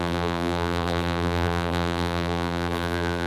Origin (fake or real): fake